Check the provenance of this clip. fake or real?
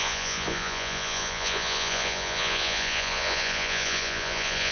fake